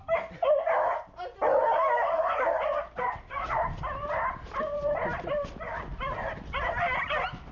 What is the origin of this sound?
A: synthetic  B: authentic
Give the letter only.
B